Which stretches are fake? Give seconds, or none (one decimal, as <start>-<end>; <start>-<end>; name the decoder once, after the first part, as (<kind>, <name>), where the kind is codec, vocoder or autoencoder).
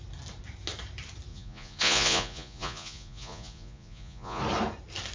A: 1.3-4.4 (vocoder, Vocos)